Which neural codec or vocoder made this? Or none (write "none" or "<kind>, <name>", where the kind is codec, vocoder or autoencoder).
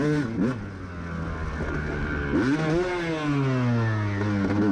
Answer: none